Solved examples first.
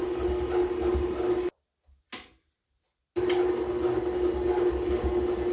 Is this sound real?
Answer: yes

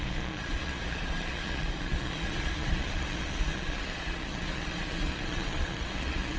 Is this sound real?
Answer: no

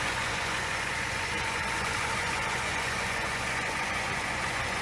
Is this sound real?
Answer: no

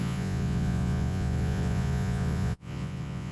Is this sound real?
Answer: no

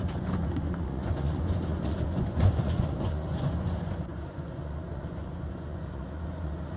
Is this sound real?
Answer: no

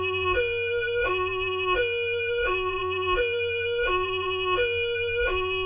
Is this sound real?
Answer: no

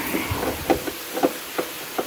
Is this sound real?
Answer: yes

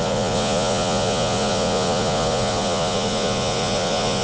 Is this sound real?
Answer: no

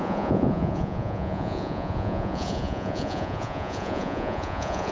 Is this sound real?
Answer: no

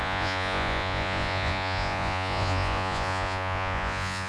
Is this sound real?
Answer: no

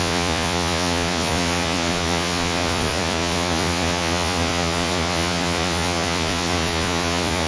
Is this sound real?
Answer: no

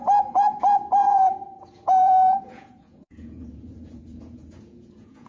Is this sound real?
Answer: no